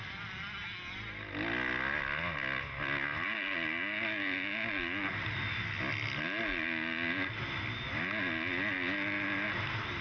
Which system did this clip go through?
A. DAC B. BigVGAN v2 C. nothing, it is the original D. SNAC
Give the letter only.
C